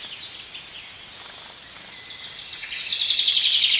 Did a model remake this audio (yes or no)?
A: no